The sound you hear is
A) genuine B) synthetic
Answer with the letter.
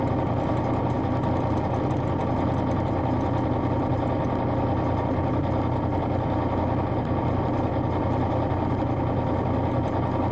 A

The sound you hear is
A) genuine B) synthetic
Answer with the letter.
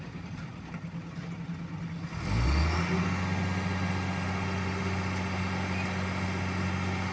A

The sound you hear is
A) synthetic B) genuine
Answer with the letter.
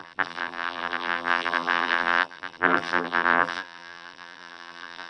A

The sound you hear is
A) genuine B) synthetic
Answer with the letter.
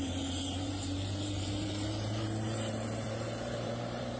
B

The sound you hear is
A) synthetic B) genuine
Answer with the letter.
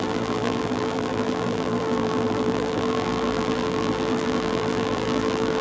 A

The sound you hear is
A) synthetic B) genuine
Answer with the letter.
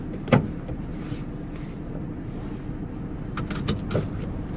B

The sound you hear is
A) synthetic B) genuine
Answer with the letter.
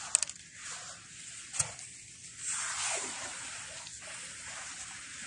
B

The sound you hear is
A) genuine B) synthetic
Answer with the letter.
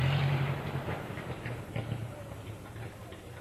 B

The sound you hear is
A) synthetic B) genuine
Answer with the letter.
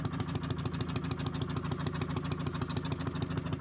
B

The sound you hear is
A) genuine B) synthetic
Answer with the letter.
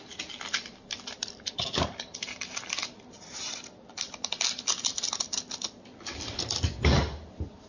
A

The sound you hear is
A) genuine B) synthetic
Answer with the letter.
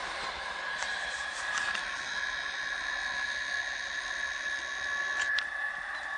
A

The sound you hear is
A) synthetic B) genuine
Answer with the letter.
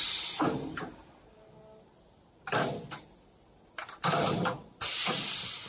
B